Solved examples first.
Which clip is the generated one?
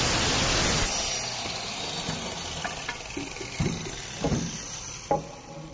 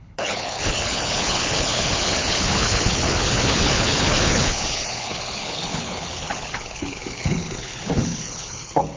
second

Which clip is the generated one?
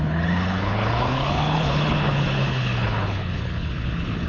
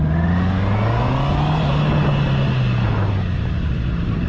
first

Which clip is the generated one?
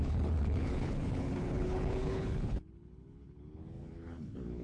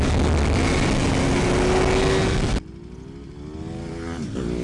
first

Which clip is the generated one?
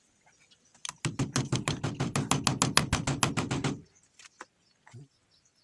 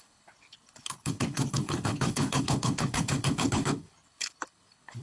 second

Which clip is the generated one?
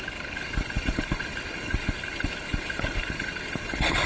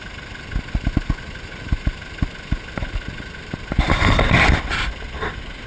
first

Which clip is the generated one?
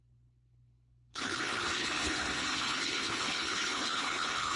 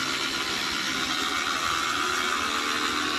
first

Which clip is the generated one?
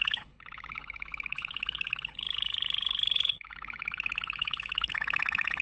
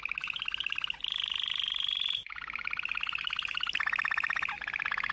first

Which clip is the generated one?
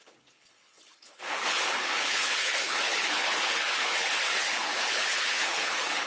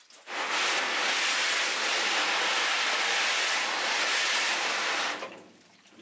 first